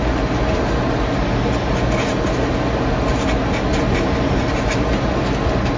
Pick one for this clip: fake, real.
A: real